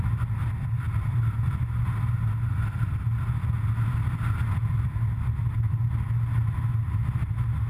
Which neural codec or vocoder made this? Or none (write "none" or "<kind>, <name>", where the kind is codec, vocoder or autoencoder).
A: none